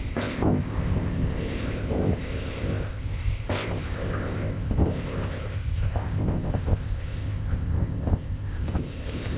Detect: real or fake fake